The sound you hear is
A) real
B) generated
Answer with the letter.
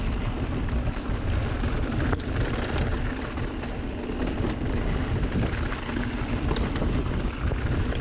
A